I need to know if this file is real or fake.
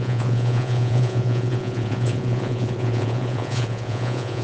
fake